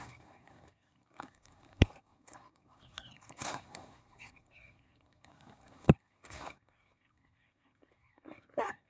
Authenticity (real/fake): fake